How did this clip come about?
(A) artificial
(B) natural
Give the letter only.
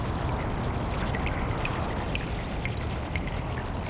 B